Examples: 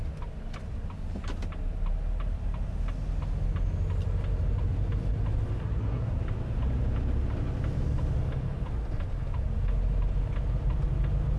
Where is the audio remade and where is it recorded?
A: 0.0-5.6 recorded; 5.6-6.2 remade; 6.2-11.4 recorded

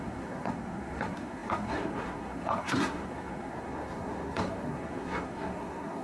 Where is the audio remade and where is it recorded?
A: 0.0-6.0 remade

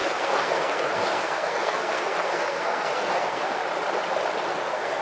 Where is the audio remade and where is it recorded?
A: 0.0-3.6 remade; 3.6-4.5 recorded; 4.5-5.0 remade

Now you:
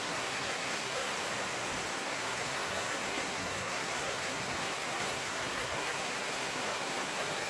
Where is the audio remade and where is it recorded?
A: 0.0-1.1 remade; 1.1-1.9 recorded; 1.9-7.5 remade

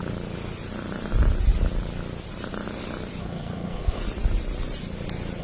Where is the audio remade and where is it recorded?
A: 0.0-3.2 recorded; 3.2-4.0 remade; 4.0-5.4 recorded

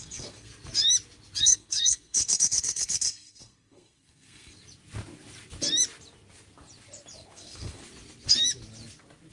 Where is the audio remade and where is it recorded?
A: 0.0-0.5 remade; 0.5-1.4 recorded; 1.4-4.6 remade; 4.6-7.3 recorded; 7.3-7.8 remade; 7.8-9.3 recorded